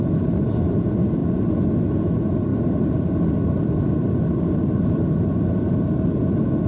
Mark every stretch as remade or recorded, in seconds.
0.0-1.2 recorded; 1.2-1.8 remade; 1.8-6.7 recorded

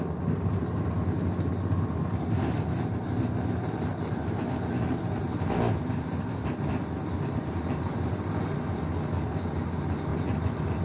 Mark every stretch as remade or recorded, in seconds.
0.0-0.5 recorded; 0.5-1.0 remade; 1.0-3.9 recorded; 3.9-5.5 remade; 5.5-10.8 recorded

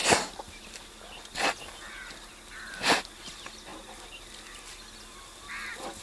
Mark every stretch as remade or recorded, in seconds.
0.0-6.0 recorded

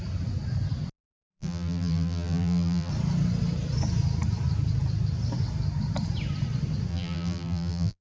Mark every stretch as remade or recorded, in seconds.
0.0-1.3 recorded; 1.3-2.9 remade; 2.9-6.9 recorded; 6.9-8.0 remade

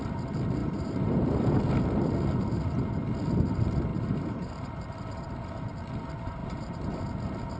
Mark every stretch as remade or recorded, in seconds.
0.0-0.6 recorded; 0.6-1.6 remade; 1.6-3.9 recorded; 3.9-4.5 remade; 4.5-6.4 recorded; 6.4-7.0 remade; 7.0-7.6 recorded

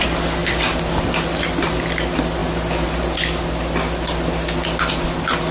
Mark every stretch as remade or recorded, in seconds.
0.0-5.5 recorded